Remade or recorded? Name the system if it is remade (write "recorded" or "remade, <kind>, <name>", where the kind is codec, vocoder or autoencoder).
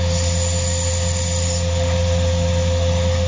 recorded